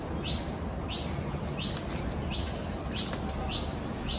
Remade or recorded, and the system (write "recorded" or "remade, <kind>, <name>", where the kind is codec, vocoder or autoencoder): recorded